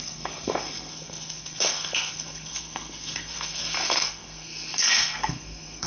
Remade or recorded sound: remade